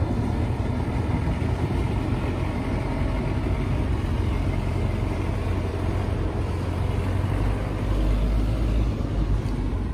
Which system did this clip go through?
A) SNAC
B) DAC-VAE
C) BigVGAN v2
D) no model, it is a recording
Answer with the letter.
D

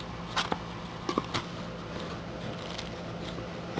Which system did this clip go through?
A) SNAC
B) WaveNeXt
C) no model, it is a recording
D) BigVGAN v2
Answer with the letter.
C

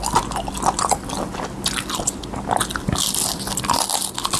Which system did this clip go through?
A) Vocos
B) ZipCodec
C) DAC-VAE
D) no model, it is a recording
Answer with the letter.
D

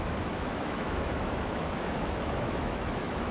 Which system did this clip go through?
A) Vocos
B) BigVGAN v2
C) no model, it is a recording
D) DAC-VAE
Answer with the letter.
D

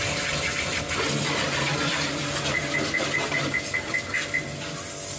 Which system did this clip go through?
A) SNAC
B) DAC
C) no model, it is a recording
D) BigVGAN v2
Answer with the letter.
C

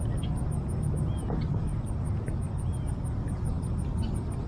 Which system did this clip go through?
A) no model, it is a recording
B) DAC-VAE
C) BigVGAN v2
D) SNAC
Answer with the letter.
A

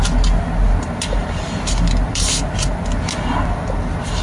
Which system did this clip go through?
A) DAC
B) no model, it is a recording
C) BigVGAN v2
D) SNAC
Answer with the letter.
B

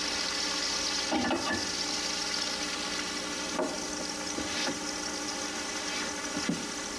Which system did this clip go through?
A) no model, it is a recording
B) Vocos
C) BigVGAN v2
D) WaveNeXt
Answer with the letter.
A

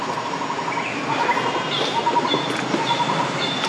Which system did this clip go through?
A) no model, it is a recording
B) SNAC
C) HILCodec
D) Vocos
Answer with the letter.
A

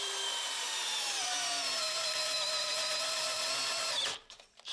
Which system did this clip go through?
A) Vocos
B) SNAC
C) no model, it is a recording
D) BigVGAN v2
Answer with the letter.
D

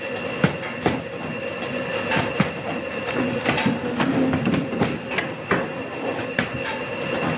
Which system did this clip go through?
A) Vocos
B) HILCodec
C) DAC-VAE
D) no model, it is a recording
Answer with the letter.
D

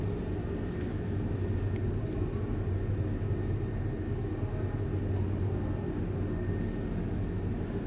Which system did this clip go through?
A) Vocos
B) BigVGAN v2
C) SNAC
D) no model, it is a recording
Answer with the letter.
D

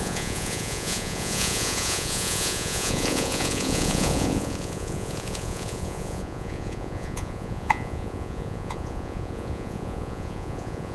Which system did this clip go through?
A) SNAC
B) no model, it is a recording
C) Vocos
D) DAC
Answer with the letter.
C